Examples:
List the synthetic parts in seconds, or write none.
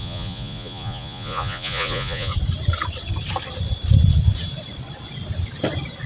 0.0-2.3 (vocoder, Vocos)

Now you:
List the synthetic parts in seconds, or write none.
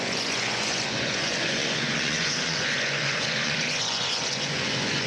0.0-5.1 (vocoder, Vocos)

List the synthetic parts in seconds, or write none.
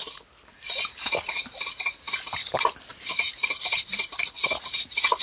none